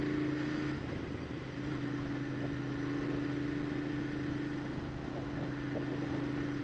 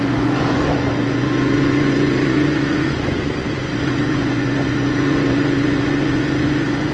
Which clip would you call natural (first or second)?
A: first